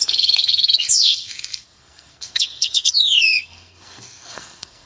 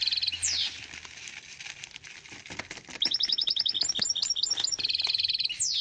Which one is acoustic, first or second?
second